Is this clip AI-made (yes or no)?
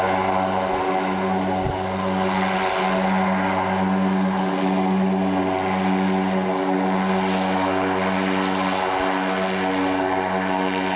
no